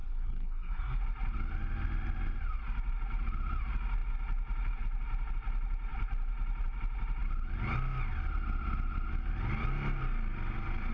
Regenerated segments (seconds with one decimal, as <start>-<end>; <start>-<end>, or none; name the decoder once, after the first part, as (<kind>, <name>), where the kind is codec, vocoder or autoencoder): 0.0-1.0 (codec, SNAC)